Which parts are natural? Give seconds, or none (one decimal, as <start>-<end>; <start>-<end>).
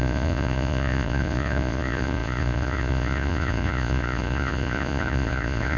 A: none